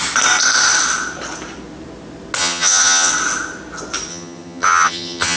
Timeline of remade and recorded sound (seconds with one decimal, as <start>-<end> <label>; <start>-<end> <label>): 0.0-2.4 recorded; 2.4-3.1 remade; 3.1-4.1 recorded; 4.1-5.4 remade